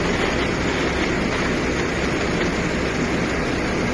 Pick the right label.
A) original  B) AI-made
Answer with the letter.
A